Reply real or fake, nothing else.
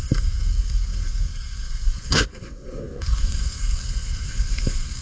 fake